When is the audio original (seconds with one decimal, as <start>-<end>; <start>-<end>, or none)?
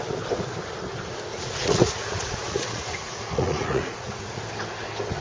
0.0-1.3; 4.4-5.2